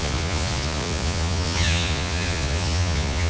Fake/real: fake